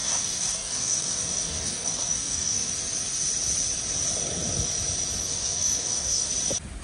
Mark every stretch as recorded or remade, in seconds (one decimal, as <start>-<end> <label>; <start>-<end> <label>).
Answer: 0.0-2.7 remade; 2.7-5.2 recorded; 5.2-6.3 remade; 6.3-6.8 recorded